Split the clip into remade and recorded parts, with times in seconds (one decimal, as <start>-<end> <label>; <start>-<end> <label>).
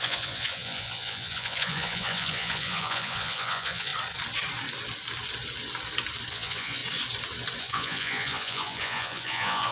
0.0-3.9 remade; 3.9-6.3 recorded; 6.3-6.8 remade; 6.8-7.6 recorded; 7.6-9.7 remade